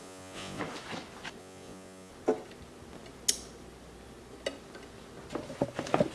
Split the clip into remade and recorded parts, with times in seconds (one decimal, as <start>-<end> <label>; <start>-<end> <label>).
0.0-0.6 remade; 0.6-1.4 recorded; 1.4-2.1 remade; 2.1-6.1 recorded